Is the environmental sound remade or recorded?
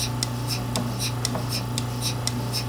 recorded